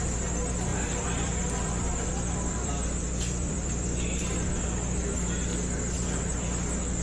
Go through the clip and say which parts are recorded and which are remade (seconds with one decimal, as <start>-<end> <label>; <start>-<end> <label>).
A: 0.0-0.7 recorded; 0.7-4.2 remade; 4.2-7.0 recorded